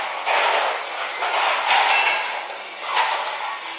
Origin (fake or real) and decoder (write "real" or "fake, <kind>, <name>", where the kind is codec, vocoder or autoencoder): real